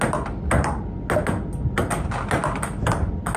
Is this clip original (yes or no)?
yes